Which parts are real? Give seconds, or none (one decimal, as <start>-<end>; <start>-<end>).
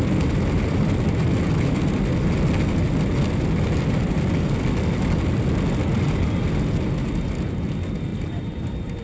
0.0-8.1